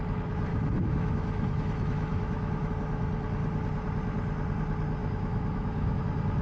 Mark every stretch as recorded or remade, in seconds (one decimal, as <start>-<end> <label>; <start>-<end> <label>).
0.0-0.5 recorded; 0.5-2.7 remade; 2.7-5.0 recorded; 5.0-6.0 remade; 6.0-6.4 recorded